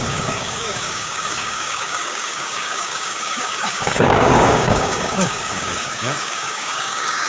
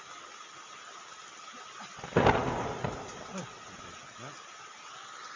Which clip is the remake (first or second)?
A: first